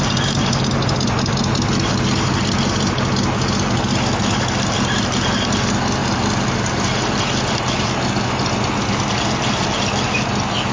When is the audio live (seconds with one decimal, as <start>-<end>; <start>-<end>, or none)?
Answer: 0.0-10.7